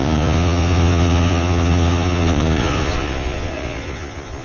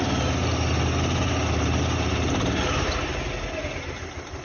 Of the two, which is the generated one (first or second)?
first